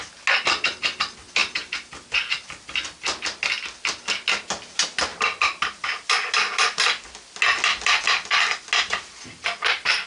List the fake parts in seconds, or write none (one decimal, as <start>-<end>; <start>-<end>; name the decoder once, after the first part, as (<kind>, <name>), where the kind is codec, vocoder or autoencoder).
none